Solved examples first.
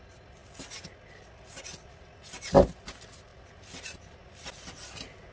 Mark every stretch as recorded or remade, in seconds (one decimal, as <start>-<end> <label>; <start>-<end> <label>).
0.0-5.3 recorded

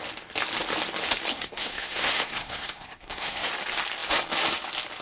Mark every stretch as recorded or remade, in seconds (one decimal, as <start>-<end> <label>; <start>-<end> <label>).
0.0-1.3 recorded; 1.3-3.5 remade; 3.5-5.0 recorded

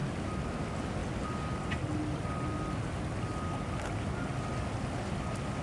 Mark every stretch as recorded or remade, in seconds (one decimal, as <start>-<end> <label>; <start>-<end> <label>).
0.0-5.6 recorded

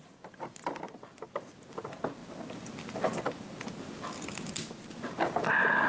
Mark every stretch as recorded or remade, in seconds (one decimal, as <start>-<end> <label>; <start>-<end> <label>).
0.0-5.9 recorded

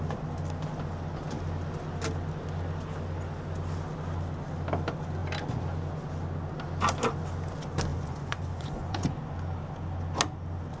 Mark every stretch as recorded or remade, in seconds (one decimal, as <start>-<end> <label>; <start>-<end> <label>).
0.0-7.9 recorded; 7.9-9.1 remade; 9.1-10.8 recorded